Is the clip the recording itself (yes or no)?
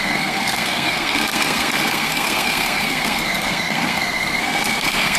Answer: no